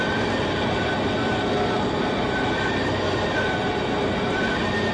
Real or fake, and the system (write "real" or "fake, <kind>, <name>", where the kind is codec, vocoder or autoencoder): real